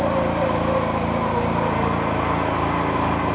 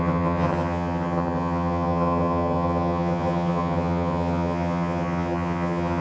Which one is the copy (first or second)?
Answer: second